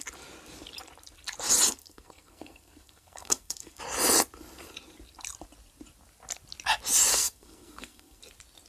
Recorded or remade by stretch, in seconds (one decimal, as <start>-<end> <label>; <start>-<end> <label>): 0.0-1.8 recorded; 1.8-3.8 remade; 3.8-7.1 recorded; 7.1-8.2 remade; 8.2-8.7 recorded